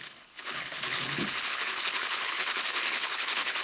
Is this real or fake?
fake